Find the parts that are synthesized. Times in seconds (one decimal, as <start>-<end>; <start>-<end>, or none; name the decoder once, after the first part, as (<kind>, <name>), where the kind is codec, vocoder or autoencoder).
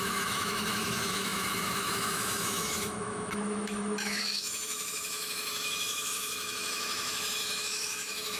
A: 0.0-8.4 (autoencoder, DAC-VAE)